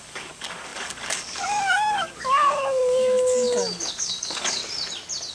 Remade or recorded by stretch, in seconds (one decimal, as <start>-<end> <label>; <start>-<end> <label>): 0.0-4.6 remade; 4.6-5.3 recorded